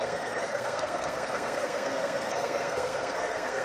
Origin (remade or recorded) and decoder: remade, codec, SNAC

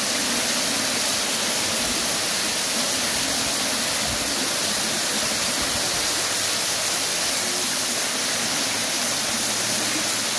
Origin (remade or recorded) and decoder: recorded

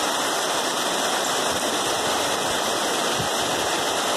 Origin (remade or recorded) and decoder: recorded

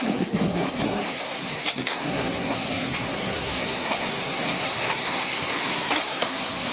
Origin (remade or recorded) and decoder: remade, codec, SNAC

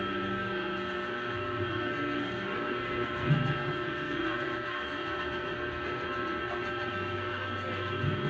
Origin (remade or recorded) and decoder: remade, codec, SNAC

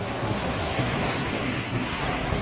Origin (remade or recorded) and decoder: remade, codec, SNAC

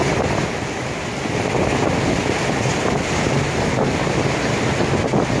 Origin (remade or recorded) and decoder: recorded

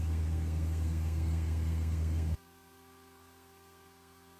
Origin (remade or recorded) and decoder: remade, codec, SNAC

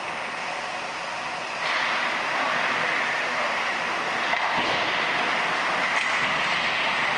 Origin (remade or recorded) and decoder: recorded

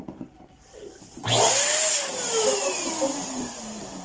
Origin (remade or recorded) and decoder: recorded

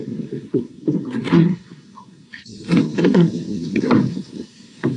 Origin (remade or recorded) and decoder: remade, codec, SNAC